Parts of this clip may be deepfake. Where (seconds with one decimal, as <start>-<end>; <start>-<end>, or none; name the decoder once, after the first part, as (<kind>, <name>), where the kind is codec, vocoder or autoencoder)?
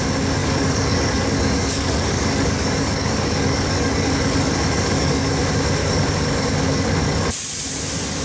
0.4-5.3 (codec, DAC); 5.8-7.3